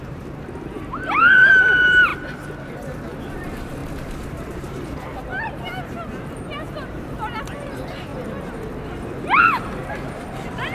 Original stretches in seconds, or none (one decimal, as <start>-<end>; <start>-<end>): 2.1-3.2; 8.1-9.4